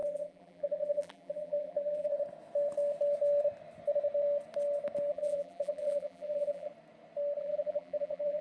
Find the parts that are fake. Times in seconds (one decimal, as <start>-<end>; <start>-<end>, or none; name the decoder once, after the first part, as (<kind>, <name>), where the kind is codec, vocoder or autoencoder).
0.0-2.1 (vocoder, BigVGAN v2); 5.1-6.7; 7.4-8.4